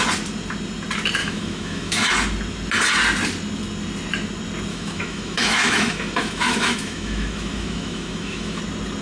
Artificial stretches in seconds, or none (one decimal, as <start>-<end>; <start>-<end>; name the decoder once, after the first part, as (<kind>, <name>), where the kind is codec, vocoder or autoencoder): 1.2-2.1 (autoencoder, DAC-VAE); 4.7-8.6